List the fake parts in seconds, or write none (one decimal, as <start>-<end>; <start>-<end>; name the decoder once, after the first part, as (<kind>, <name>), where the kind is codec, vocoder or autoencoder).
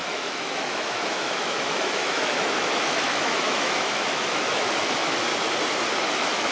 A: 0.0-5.3 (autoencoder, DAC-VAE); 6.0-6.5